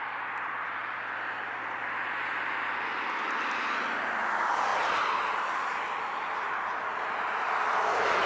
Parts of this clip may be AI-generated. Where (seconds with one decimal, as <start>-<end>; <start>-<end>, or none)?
none